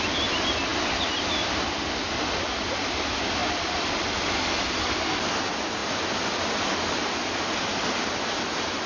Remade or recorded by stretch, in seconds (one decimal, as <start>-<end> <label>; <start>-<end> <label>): 0.0-8.9 recorded